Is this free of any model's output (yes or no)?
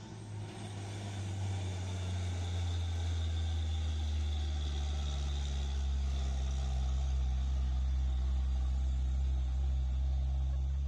yes